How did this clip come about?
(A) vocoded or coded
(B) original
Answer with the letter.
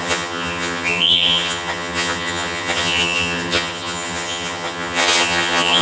A